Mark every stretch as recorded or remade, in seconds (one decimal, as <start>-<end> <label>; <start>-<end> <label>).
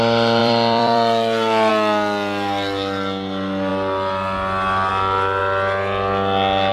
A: 0.0-0.4 recorded; 0.4-1.7 remade; 1.7-6.7 recorded